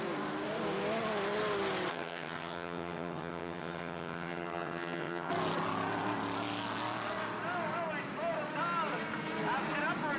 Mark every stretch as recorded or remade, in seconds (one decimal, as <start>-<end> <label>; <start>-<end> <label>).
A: 0.0-1.9 recorded; 1.9-5.3 remade; 5.3-10.2 recorded